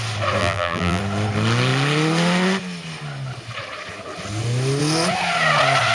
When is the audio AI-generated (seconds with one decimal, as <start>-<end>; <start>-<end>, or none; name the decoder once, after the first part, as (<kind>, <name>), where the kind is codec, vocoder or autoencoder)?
0.4-1.0 (vocoder, BigVGAN v2)